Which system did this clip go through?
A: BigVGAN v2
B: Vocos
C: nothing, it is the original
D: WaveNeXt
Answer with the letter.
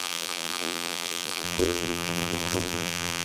A